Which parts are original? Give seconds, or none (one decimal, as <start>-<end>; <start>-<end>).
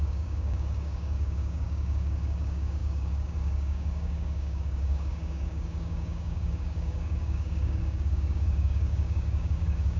none